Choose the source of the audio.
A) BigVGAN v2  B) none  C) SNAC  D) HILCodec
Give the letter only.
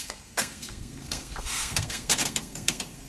C